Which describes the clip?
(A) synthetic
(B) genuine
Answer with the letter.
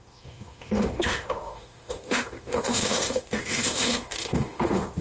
A